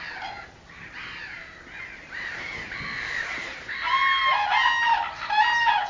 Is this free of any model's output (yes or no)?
yes